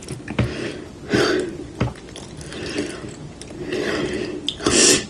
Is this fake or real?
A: real